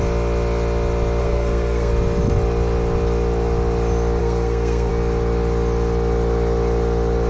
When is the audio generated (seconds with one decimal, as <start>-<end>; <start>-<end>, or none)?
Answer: 1.2-1.9; 4.2-4.9